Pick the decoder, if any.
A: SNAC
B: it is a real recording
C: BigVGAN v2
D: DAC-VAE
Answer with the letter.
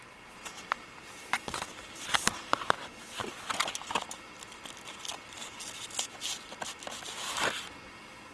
B